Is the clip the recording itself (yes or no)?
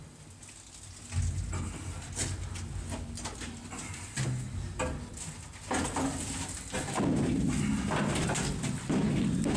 yes